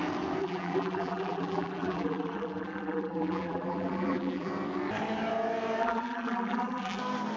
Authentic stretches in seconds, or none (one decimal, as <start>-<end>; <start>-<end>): 0.0-0.4; 4.5-5.8; 7.0-7.4